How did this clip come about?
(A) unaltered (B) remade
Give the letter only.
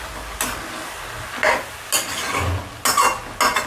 A